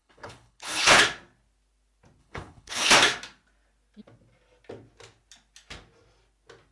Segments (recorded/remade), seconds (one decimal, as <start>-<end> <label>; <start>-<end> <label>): 0.0-1.0 remade; 1.0-2.2 recorded; 2.2-2.9 remade; 2.9-6.7 recorded